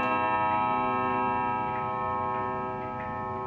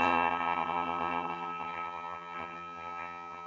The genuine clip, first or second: first